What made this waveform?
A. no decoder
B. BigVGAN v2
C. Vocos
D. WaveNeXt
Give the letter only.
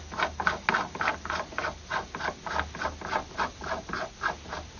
A